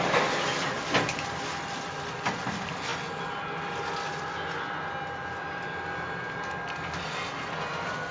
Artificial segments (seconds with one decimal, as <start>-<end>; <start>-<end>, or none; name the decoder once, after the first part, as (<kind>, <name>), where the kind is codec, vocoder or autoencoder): none